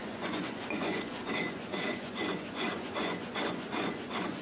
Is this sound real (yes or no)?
no